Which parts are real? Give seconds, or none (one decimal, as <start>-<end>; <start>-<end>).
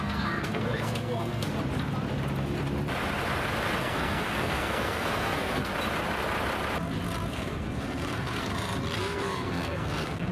1.5-3.8; 5.7-7.3; 8.5-9.0